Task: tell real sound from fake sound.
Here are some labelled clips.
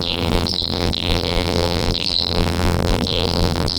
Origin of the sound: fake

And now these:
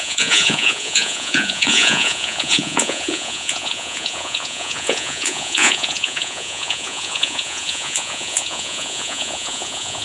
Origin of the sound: fake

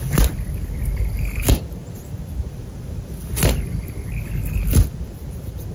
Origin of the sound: fake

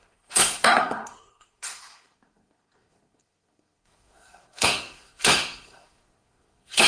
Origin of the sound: fake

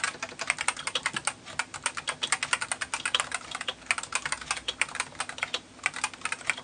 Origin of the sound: real